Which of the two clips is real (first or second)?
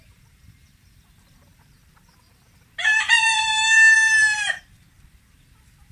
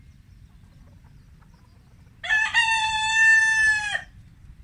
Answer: second